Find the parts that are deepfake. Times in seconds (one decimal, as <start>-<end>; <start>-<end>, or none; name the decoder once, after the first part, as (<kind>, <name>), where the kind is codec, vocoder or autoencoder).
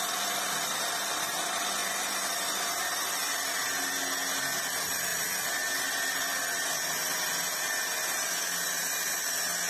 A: none